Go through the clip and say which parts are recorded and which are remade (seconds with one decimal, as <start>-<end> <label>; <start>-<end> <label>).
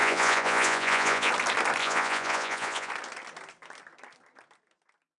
0.0-1.3 remade; 1.3-1.8 recorded; 1.8-2.9 remade; 2.9-5.2 recorded